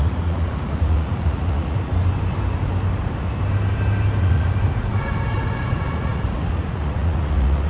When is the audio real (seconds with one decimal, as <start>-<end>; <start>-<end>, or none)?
1.9-4.2